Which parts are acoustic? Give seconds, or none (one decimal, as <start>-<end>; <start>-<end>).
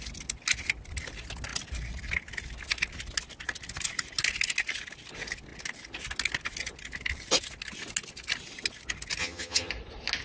0.0-9.2; 9.7-10.2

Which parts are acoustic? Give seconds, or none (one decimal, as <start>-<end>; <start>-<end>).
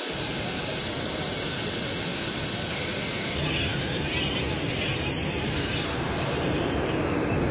2.1-2.8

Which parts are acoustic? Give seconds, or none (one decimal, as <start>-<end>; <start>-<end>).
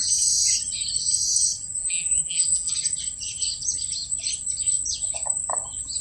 0.0-1.8; 2.7-6.0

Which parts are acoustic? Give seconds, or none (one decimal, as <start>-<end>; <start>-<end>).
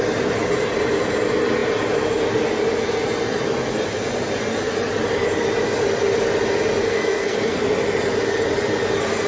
0.0-6.8; 7.6-9.3